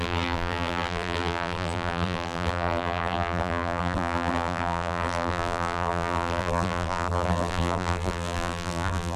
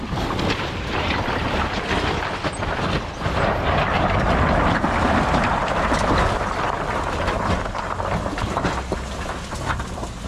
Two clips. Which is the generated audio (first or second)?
first